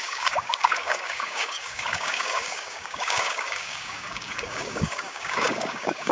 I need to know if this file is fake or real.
fake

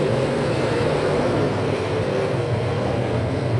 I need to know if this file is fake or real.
fake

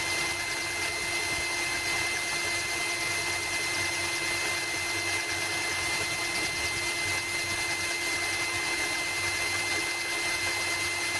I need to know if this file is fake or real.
real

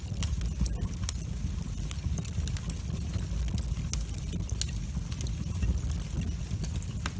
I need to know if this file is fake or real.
real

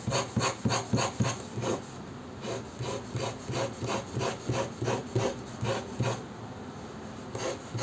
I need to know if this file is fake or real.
real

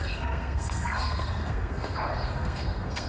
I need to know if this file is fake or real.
fake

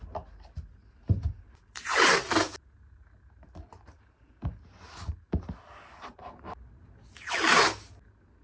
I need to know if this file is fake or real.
real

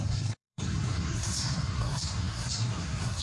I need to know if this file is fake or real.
fake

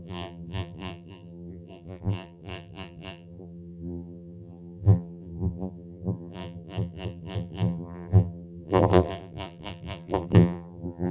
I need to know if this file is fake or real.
fake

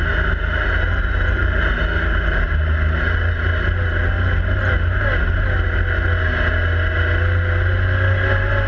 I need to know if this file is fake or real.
real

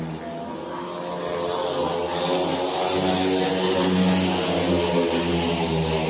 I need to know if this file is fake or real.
real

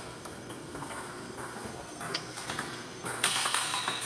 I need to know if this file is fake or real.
fake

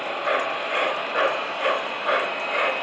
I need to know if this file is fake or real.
real